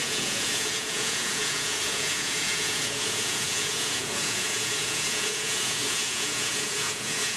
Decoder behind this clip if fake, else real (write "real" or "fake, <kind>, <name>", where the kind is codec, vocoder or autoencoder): fake, vocoder, Vocos